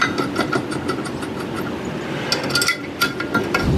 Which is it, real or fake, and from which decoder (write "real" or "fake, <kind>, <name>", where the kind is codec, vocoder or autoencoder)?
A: real